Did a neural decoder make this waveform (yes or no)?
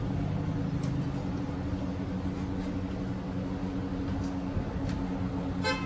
no